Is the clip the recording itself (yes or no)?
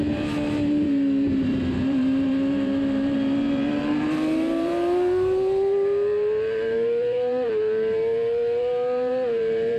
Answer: no